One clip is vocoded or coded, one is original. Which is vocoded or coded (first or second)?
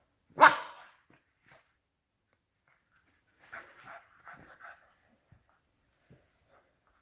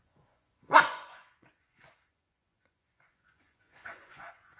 second